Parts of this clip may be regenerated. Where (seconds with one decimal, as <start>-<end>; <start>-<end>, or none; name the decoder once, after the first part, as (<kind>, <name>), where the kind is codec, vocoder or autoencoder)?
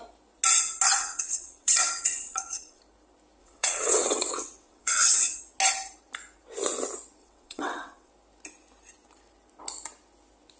1.0-2.8 (vocoder, WaveNeXt); 3.4-5.4; 7.2-8.1